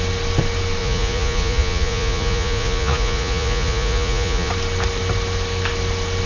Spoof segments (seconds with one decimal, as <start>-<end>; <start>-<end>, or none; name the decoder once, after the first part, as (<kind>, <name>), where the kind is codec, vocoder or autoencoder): 0.8-4.5 (vocoder, Vocos)